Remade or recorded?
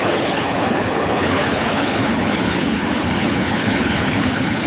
remade